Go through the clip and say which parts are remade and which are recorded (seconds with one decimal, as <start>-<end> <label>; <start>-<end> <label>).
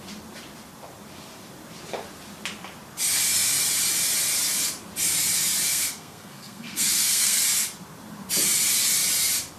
0.0-5.7 recorded; 5.7-7.4 remade; 7.4-9.6 recorded